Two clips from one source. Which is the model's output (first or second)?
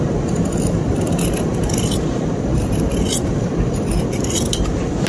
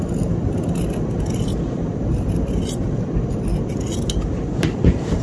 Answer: first